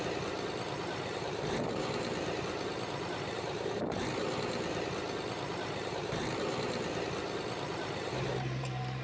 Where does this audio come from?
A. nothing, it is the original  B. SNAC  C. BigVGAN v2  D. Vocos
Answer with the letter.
C